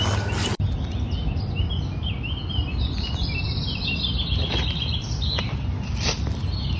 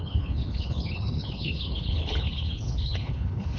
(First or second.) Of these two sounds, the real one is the first